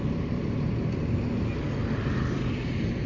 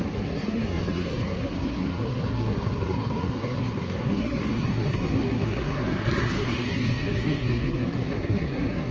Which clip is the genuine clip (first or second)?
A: first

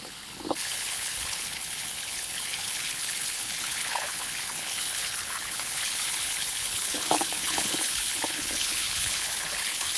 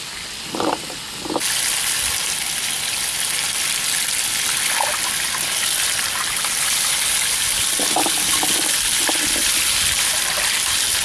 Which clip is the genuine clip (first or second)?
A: second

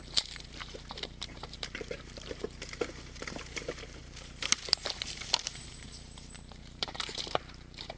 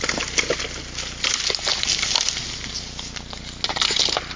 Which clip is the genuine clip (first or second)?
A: second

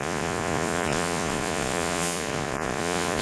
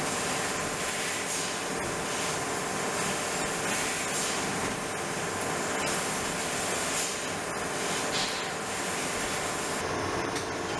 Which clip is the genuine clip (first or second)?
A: second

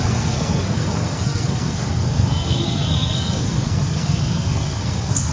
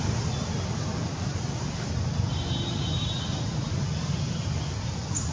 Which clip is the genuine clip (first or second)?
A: second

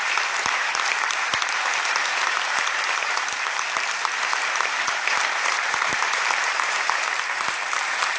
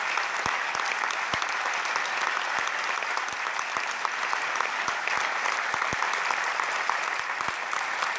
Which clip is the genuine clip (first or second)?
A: second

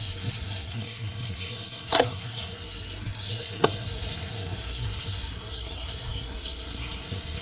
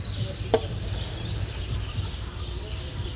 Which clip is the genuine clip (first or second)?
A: second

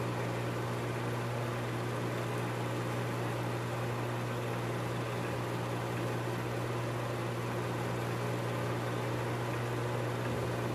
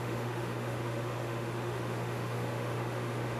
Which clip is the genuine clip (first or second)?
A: first